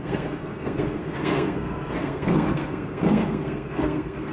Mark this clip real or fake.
fake